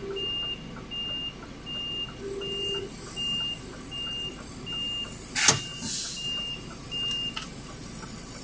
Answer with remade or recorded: recorded